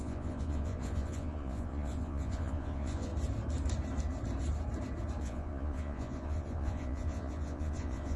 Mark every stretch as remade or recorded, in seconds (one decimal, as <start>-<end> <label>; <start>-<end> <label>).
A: 0.0-3.1 remade; 3.1-5.2 recorded; 5.2-8.2 remade